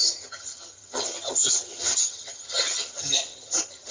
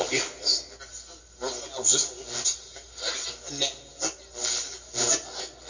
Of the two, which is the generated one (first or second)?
first